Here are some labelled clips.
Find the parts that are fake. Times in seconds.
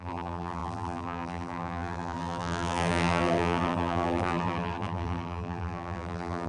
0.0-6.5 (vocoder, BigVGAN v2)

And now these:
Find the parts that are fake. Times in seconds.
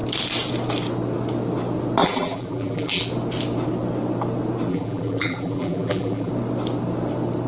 2.0-3.1 (vocoder, BigVGAN v2); 4.7-6.3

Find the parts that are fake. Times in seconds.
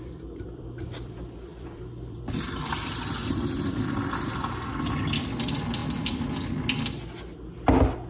0.0-5.8 (vocoder, BigVGAN v2)